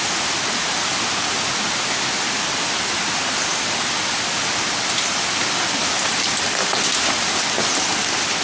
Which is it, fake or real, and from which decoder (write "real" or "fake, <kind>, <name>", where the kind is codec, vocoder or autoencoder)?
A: real